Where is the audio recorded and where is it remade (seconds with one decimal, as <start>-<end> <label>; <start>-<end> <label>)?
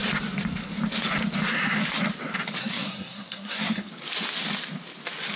0.0-2.6 recorded; 2.6-3.9 remade; 3.9-5.4 recorded